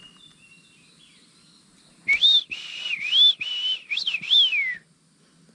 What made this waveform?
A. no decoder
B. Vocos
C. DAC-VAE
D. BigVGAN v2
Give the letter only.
A